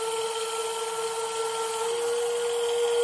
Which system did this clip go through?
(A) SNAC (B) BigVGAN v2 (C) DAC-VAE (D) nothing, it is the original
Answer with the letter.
D